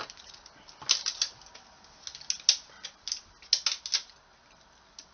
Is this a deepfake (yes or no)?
no